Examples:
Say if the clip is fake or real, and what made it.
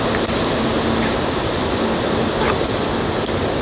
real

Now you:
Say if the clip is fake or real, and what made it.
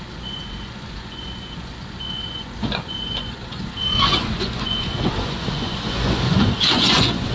fake, vocoder, Vocos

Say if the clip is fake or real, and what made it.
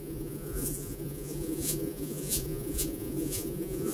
fake, vocoder, Vocos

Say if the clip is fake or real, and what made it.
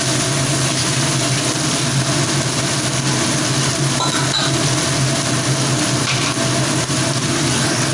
real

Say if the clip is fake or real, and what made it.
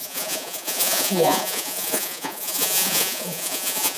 fake, vocoder, Vocos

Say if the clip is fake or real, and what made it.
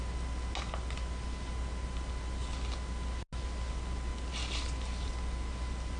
real